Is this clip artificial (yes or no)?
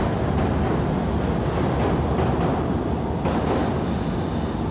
no